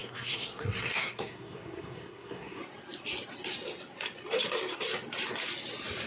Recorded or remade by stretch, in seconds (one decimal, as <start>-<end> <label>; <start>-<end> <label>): 0.0-2.6 remade; 2.6-6.1 recorded